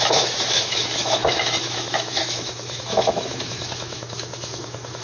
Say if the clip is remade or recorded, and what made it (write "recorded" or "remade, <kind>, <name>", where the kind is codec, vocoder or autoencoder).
remade, autoencoder, DAC-VAE